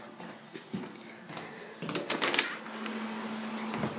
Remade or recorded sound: recorded